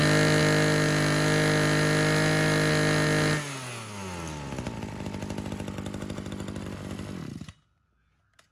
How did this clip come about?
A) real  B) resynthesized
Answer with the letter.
A